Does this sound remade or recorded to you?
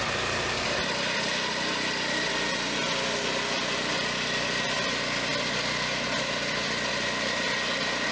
recorded